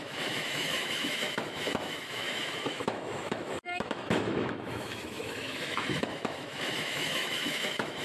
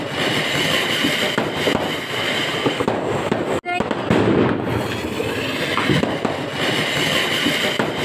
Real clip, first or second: second